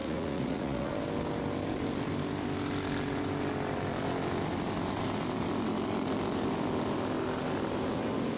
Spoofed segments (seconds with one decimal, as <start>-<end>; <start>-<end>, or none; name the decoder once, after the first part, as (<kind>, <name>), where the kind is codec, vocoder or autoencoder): 0.0-0.9 (vocoder, Vocos)